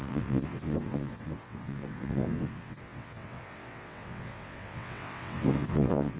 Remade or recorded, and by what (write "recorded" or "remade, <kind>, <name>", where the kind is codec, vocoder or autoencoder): remade, vocoder, WaveNeXt